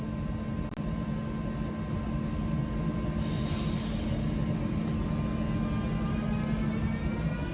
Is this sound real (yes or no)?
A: yes